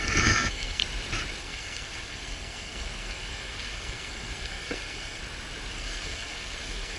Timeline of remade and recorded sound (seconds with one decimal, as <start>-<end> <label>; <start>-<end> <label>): 0.0-0.8 remade; 0.8-1.4 recorded; 1.4-5.2 remade; 5.2-5.7 recorded; 5.7-7.0 remade